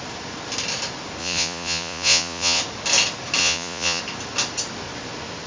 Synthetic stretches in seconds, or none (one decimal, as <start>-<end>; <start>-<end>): 1.2-2.6; 3.4-4.0